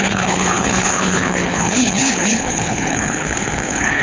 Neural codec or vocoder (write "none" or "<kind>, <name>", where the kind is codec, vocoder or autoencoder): codec, HILCodec